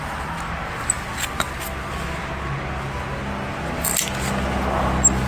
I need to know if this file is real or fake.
real